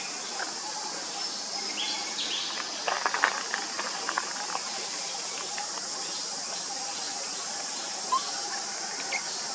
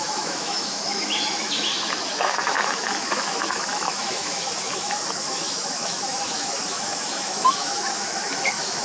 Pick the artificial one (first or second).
second